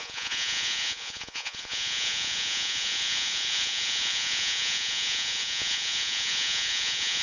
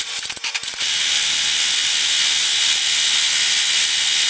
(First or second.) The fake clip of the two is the first